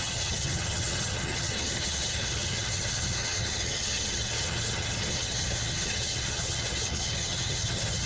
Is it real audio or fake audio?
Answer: fake